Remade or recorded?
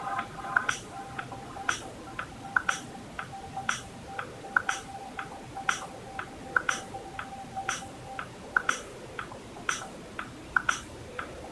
remade